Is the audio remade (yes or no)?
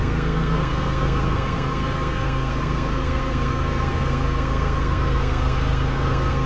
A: yes